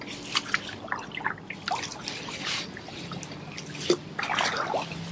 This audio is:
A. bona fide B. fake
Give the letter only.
A